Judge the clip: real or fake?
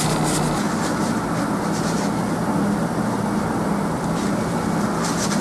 real